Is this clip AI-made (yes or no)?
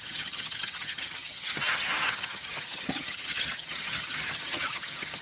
yes